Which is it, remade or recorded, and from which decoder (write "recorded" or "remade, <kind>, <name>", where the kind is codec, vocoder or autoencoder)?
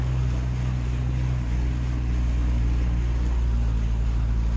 recorded